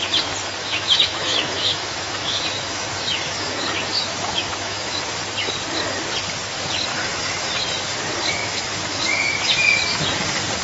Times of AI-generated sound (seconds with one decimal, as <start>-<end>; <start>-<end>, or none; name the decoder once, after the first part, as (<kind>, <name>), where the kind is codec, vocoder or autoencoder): 0.6-5.0 (autoencoder, DAC-VAE); 6.9-7.5; 8.4-9.0